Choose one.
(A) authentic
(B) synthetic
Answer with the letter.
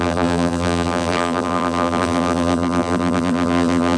B